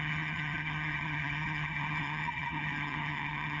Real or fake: fake